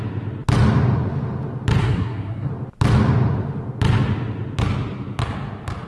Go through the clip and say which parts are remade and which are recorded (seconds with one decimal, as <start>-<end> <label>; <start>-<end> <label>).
0.0-1.8 recorded; 1.8-2.5 remade; 2.5-5.9 recorded